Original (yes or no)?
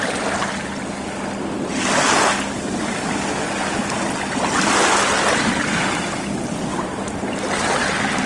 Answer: yes